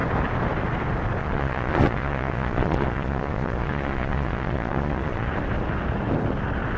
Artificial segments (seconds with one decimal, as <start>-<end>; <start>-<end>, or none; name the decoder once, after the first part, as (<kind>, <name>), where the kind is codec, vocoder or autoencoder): 1.2-5.3 (vocoder, Vocos)